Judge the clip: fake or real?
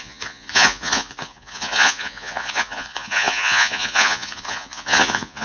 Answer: fake